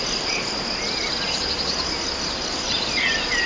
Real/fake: real